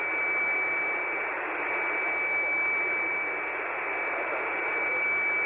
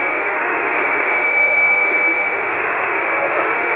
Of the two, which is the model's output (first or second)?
second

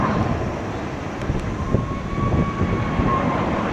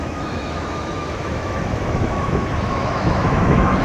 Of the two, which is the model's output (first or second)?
second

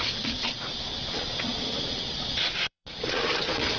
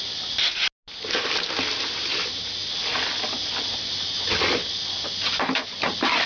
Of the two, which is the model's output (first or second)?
first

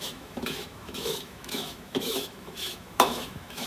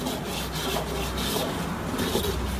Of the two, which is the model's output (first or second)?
first